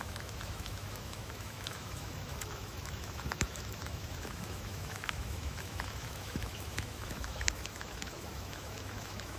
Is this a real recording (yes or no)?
no